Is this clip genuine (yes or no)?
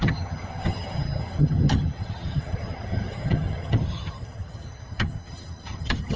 no